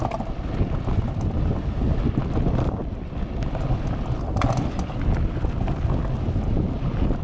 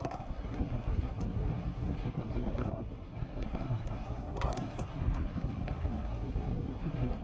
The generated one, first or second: second